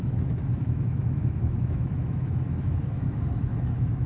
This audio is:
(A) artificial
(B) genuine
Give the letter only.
A